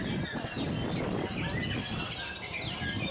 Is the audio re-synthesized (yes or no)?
no